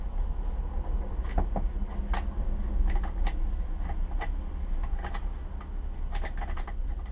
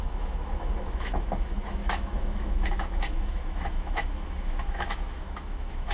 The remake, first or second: second